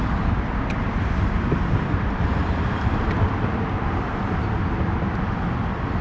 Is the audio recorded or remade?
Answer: remade